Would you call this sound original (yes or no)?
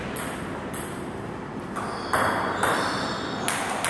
yes